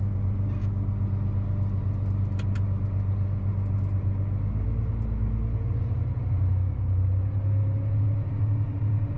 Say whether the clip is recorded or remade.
recorded